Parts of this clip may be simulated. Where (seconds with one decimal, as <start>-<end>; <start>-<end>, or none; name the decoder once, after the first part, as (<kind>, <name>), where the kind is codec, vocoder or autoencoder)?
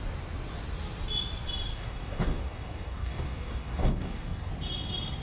1.7-4.5 (codec, DAC)